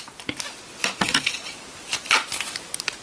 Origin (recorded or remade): recorded